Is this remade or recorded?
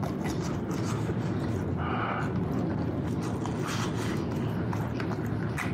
recorded